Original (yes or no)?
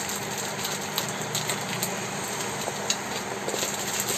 yes